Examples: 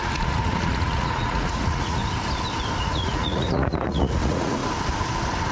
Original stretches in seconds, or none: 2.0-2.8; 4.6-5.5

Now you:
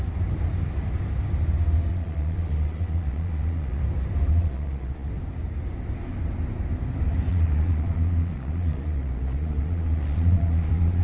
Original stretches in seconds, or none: 0.0-1.9; 3.8-4.3; 5.1-7.3

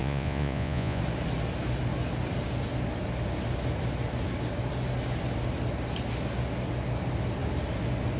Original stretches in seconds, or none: 1.0-8.2

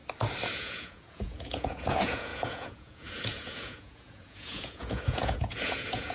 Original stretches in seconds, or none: 0.0-0.5

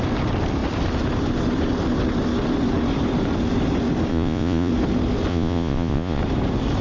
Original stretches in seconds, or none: 0.0-4.1; 4.7-5.3; 6.2-6.8

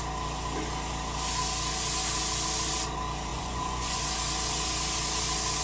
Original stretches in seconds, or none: 0.0-3.3; 4.0-5.6